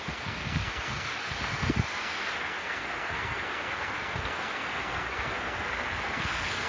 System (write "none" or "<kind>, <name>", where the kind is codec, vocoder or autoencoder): codec, SNAC